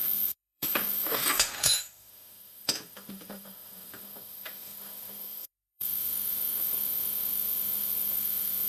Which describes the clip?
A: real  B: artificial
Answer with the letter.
B